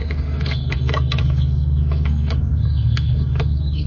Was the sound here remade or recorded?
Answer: remade